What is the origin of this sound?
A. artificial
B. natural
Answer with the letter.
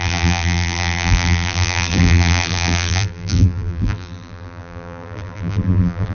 A